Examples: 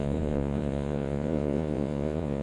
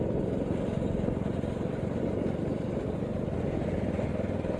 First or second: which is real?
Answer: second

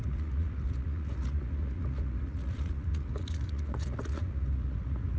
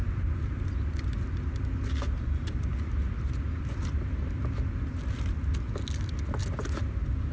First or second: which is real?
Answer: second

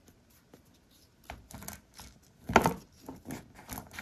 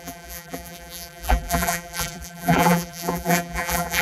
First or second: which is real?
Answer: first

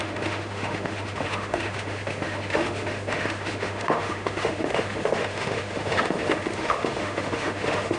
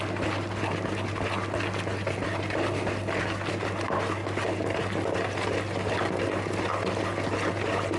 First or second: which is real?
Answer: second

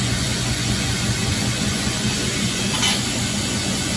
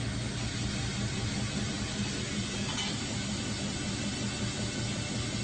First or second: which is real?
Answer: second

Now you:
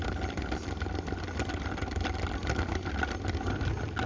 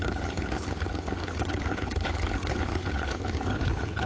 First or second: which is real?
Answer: first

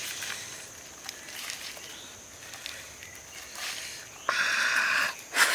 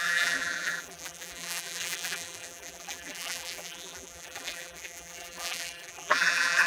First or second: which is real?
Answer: first